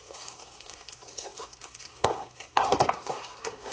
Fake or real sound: fake